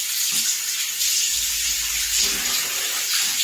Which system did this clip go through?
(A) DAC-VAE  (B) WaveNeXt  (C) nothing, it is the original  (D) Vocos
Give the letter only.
C